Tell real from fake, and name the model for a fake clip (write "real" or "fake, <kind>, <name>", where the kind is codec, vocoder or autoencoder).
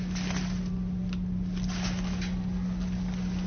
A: real